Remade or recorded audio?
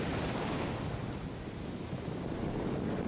recorded